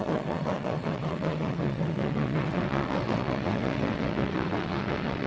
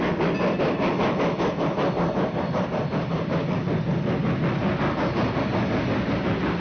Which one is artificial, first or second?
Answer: first